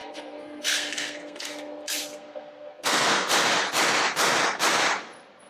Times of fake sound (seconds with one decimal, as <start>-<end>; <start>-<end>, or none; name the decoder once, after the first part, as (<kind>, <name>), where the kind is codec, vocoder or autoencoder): 0.0-3.3 (codec, SNAC)